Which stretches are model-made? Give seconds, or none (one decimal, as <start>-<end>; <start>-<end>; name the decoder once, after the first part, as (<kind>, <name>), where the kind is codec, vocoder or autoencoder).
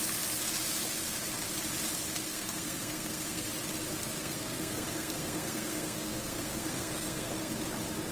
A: 2.3-3.5 (codec, SNAC); 4.2-7.5